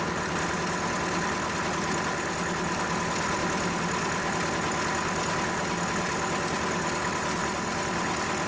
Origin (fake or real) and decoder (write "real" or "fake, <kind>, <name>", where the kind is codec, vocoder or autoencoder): real